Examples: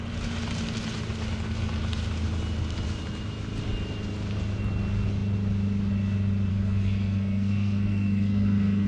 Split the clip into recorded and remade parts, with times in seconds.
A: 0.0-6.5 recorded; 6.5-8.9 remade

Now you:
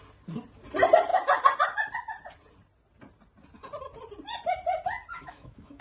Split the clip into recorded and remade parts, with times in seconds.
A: 0.0-5.1 recorded; 5.1-5.8 remade

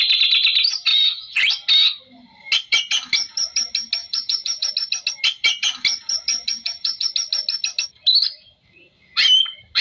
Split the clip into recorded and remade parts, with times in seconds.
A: 0.0-0.9 recorded; 0.9-1.5 remade; 1.5-4.0 recorded; 4.0-4.7 remade; 4.7-6.3 recorded; 6.3-7.1 remade; 7.1-9.8 recorded

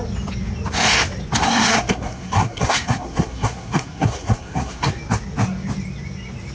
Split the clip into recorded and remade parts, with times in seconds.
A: 0.0-1.4 recorded; 1.4-4.9 remade; 4.9-6.5 recorded

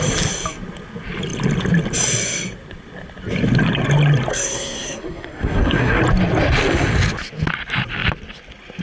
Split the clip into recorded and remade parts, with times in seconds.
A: 0.0-4.3 recorded; 4.3-6.0 remade; 6.0-8.8 recorded

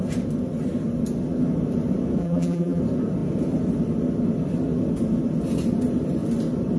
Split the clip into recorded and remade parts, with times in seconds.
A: 0.0-2.2 recorded; 2.2-2.8 remade; 2.8-6.8 recorded

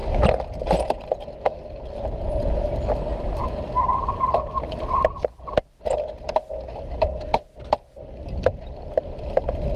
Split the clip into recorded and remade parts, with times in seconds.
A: 0.0-3.0 recorded; 3.0-3.4 remade; 3.4-6.8 recorded; 6.8-7.3 remade; 7.3-8.0 recorded; 8.0-9.8 remade

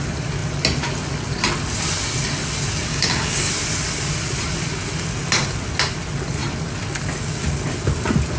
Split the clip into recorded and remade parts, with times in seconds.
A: 0.0-2.9 recorded; 2.9-3.5 remade; 3.5-8.4 recorded